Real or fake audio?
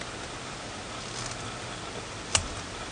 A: real